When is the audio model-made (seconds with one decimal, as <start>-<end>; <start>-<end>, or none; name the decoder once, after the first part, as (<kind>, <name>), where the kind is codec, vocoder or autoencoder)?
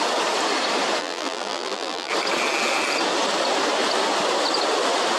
1.0-2.1 (vocoder, BigVGAN v2)